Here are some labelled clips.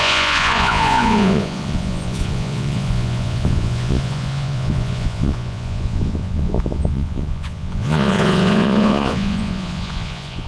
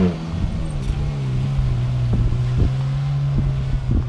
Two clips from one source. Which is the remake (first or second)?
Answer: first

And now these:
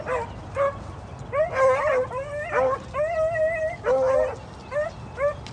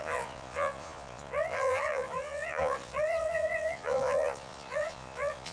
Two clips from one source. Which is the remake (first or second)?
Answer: second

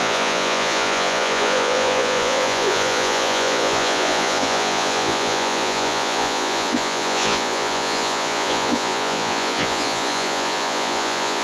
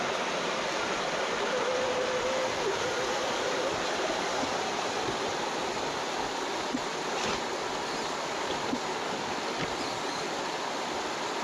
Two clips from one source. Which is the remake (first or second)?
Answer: first